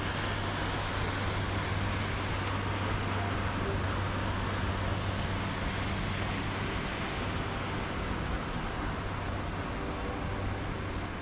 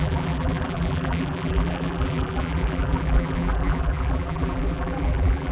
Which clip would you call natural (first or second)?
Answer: first